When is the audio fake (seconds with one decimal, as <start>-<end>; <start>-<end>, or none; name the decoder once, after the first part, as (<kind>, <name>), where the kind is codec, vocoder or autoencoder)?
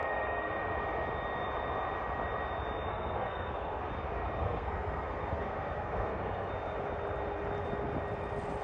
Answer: 0.0-0.5 (codec, SNAC); 2.9-3.8; 4.4-6.5